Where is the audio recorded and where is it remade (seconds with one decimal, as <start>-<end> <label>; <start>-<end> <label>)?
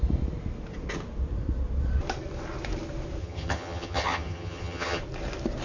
0.0-3.2 recorded; 3.2-5.0 remade; 5.0-5.6 recorded